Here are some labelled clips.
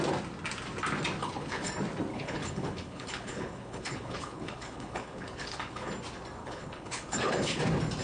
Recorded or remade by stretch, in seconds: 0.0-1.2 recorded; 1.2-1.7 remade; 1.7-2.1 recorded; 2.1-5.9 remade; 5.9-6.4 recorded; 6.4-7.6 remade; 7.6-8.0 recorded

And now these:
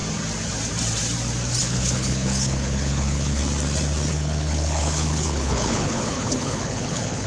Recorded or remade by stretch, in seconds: 0.0-1.6 recorded; 1.6-3.4 remade; 3.4-4.1 recorded; 4.1-7.3 remade

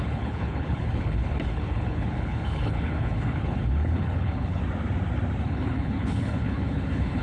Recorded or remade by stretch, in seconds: 0.0-4.6 remade; 4.6-5.4 recorded; 5.4-7.2 remade